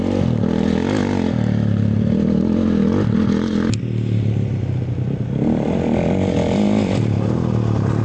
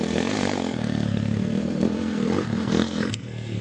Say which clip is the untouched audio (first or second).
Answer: first